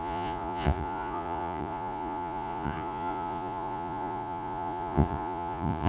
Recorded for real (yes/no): no